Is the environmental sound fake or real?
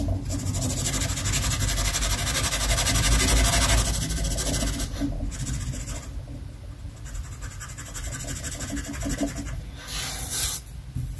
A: real